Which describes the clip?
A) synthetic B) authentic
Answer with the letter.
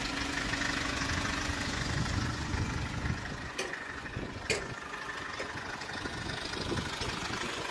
A